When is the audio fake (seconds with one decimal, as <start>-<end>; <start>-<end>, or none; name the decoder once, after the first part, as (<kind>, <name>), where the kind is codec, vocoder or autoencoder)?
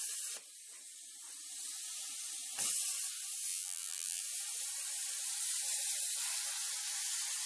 3.5-4.2 (vocoder, BigVGAN v2)